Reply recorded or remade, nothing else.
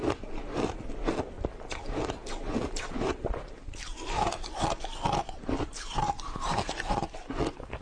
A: recorded